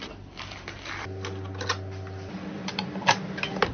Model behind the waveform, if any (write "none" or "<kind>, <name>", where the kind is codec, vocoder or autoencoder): none